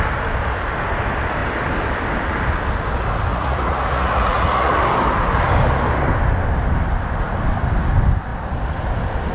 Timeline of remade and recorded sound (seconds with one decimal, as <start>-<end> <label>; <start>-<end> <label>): 0.0-3.3 recorded; 3.3-4.8 remade; 4.8-9.3 recorded